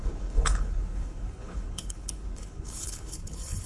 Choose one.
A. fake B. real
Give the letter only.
A